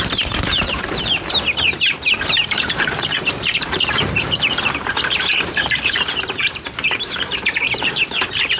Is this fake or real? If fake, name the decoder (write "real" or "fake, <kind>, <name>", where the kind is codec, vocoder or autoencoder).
fake, vocoder, BigVGAN v2